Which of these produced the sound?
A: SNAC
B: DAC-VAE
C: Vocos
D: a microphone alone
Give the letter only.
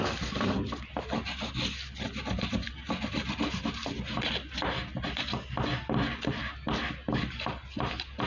D